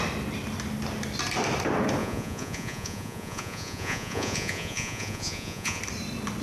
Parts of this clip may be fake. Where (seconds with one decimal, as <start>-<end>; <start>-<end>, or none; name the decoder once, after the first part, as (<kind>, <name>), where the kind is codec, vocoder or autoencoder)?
2.0-5.8 (vocoder, Vocos)